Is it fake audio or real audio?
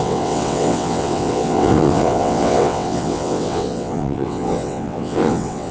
fake